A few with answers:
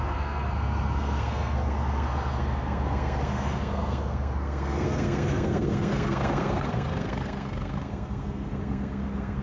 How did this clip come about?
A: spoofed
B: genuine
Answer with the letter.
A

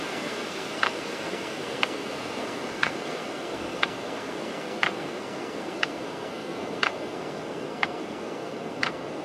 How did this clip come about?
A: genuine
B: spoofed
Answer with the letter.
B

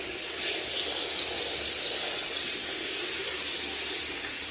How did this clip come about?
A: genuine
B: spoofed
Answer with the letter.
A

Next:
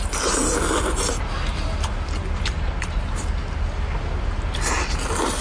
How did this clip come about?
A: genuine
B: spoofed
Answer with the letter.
A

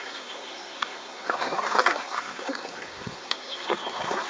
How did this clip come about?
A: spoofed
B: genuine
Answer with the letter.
A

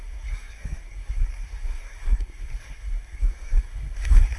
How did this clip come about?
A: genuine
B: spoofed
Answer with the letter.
B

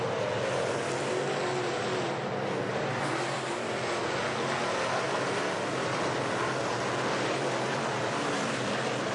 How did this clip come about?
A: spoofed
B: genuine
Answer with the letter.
B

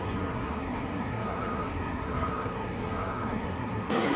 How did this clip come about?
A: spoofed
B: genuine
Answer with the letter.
A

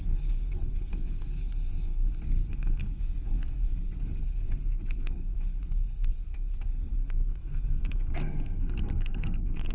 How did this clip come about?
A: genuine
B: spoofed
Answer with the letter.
B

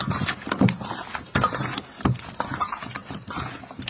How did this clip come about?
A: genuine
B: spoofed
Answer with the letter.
A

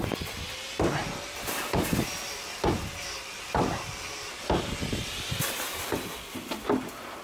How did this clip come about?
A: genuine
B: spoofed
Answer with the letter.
A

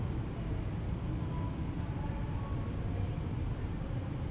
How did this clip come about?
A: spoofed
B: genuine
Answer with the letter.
B